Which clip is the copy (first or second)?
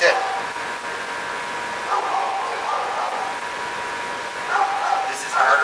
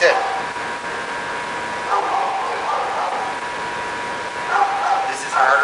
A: first